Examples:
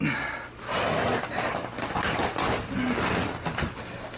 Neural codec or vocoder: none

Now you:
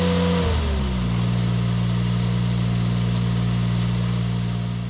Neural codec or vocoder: none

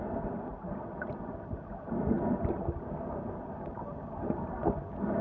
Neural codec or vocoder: none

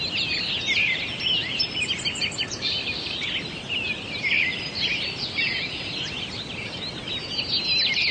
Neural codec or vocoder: none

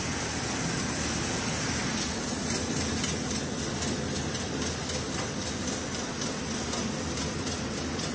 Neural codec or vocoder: none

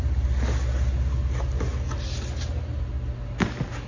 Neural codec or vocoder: none